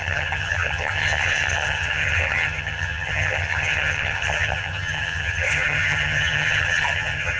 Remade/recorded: remade